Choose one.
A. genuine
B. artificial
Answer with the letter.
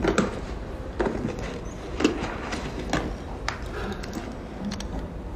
A